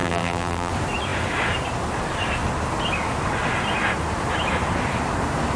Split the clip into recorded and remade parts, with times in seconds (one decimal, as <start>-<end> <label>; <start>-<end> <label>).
0.0-0.7 remade; 0.7-5.6 recorded